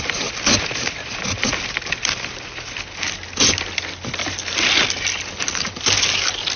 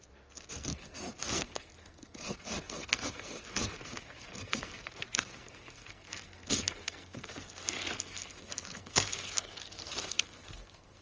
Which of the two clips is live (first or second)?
first